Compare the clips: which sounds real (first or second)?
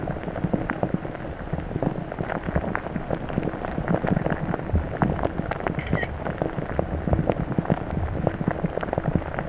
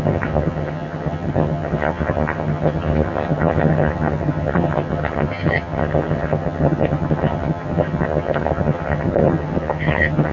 first